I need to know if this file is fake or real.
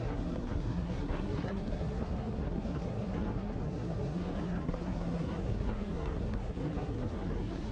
fake